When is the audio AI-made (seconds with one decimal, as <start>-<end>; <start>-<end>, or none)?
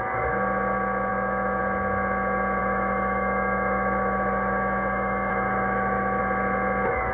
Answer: 1.1-1.6; 2.6-6.2